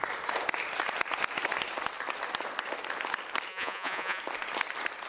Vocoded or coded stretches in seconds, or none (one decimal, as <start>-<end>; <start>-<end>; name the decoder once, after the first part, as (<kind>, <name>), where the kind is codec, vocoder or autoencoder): 3.5-4.2 (vocoder, Vocos)